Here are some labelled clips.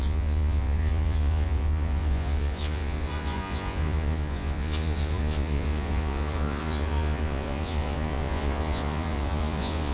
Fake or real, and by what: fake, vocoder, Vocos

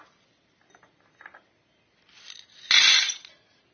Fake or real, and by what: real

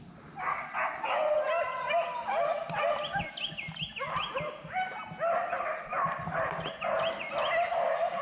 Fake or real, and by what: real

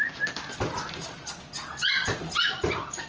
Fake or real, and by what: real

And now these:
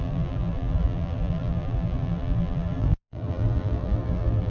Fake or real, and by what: fake, vocoder, BigVGAN v2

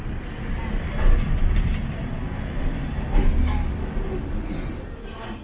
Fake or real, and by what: real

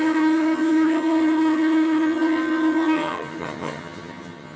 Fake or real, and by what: fake, vocoder, HiFi-GAN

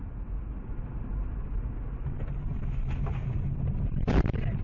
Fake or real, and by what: real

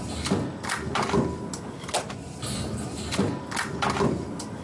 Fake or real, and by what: real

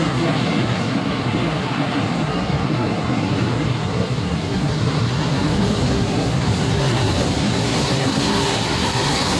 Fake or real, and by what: fake, codec, SNAC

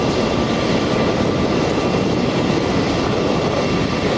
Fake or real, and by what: real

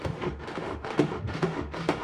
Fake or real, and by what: fake, autoencoder, DAC-VAE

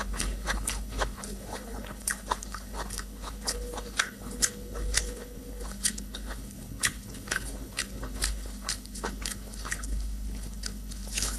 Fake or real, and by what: fake, codec, HILCodec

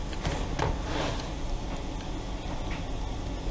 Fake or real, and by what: real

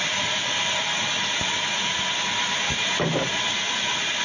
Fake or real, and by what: real